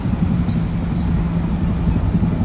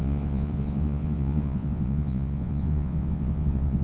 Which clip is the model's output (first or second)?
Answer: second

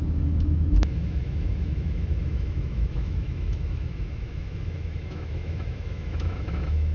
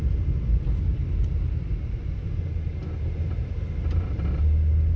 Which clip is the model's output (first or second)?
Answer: first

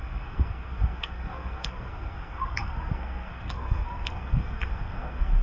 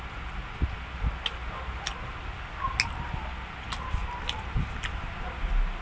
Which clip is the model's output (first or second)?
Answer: first